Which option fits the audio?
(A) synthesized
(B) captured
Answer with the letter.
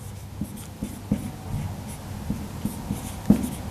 B